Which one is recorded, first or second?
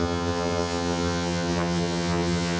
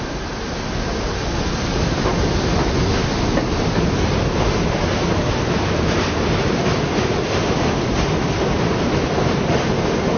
second